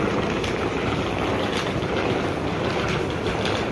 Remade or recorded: recorded